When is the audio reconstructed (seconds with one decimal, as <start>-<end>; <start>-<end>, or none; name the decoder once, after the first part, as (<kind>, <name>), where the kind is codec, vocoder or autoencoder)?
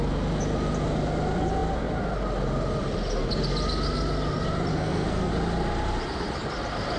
4.7-5.3 (codec, SNAC)